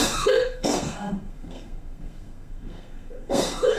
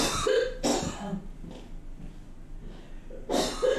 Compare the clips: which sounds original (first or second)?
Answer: second